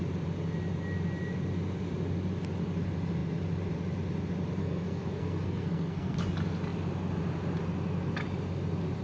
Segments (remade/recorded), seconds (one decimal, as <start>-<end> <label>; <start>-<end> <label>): 0.0-4.6 recorded; 4.6-6.2 remade; 6.2-9.0 recorded